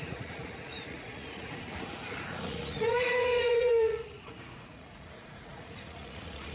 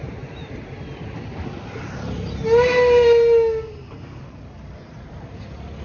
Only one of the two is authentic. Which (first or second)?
second